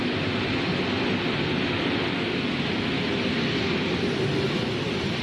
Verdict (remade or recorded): recorded